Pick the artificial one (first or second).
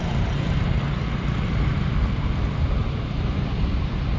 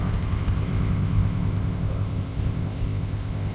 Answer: second